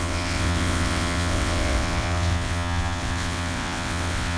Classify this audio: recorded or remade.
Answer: remade